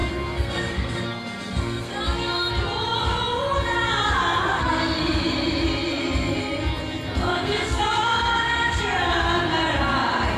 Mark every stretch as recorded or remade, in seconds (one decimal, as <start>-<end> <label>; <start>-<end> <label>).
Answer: 0.0-2.5 remade; 2.5-4.5 recorded; 4.5-5.2 remade; 5.2-7.3 recorded; 7.3-8.8 remade; 8.8-10.4 recorded